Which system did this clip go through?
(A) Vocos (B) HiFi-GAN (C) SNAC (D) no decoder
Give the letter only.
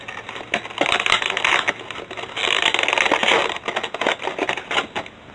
D